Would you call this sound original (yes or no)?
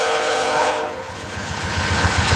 no